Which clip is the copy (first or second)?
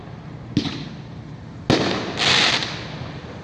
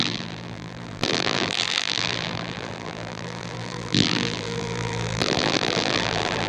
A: second